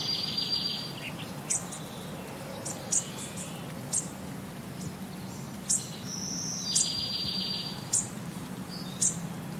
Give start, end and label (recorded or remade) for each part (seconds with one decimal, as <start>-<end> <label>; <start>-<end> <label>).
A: 0.0-6.5 recorded; 6.5-9.2 remade; 9.2-9.6 recorded